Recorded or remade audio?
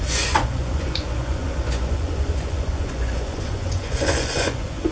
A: remade